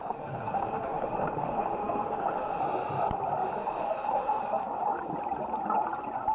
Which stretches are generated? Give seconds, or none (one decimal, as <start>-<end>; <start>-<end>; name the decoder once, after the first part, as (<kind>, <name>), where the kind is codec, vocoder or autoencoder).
0.0-2.6 (autoencoder, DAC-VAE); 3.6-4.4